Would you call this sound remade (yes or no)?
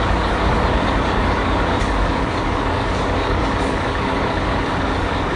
yes